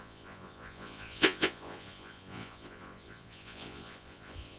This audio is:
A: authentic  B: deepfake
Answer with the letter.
B